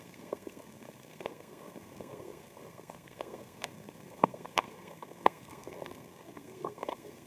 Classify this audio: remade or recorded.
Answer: remade